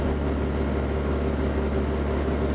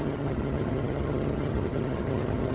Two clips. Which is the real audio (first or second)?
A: first